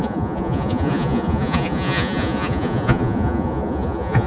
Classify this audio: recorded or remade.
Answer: remade